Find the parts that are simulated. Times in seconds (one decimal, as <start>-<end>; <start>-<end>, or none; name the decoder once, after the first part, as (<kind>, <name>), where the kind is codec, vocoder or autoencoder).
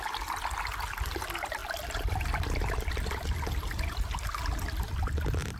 none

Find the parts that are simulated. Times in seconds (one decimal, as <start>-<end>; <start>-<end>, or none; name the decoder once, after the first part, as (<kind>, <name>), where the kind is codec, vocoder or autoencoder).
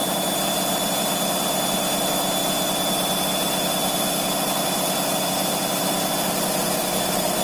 none